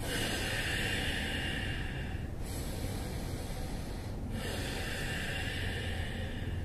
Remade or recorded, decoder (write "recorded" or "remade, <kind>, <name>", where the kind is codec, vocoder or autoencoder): recorded